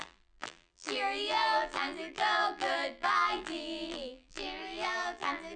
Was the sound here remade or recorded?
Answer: remade